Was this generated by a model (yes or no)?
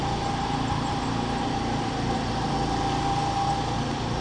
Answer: no